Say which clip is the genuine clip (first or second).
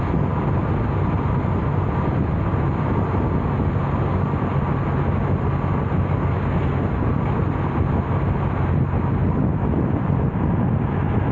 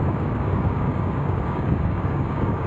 first